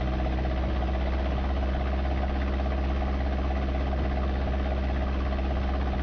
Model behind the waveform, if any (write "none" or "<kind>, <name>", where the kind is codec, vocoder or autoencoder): none